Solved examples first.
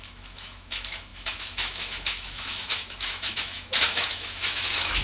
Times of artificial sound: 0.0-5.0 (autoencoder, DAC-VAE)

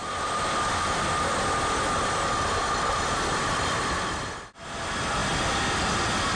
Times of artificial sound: none

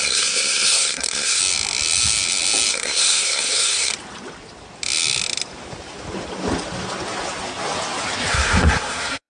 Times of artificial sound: 0.0-1.4 (codec, SNAC); 2.7-3.9; 8.3-9.3

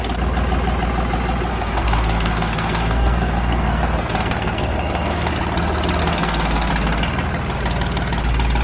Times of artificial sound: 1.5-5.3 (codec, SNAC); 6.0-6.7